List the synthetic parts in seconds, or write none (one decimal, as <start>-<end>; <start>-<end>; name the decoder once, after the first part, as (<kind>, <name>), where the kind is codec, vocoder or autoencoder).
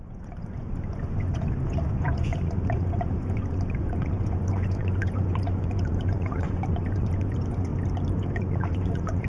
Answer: 0.0-7.7 (vocoder, Vocos); 8.3-9.3